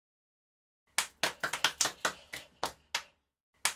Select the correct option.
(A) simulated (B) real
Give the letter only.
B